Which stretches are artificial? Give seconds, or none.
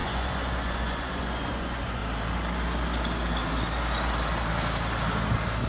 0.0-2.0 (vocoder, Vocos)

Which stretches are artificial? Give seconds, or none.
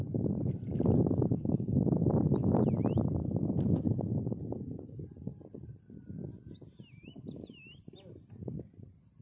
none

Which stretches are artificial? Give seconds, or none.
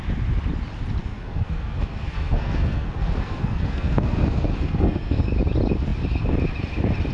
1.0-5.3 (codec, SNAC)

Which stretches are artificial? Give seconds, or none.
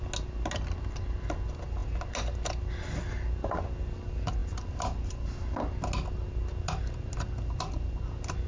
none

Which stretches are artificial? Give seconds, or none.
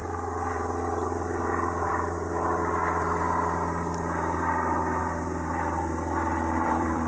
0.0-1.9 (vocoder, BigVGAN v2); 5.0-7.1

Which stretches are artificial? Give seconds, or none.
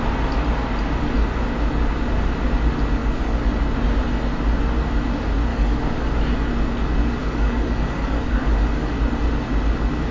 3.0-3.5 (codec, DAC); 5.5-6.1; 7.2-8.9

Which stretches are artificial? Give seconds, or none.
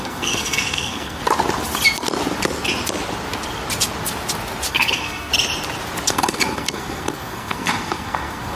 0.0-1.2 (codec, SNAC); 4.7-5.3; 6.1-8.6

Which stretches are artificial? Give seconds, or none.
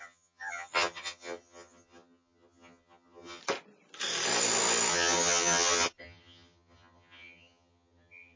0.0-3.4 (vocoder, HiFi-GAN); 4.9-8.4